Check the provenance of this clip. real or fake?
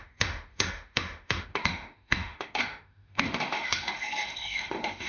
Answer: fake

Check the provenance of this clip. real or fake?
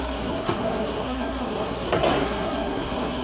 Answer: fake